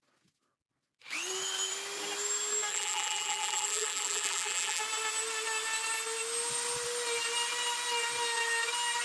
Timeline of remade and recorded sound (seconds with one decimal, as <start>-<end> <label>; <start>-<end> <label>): 0.0-2.7 recorded; 2.7-4.8 remade; 4.8-9.0 recorded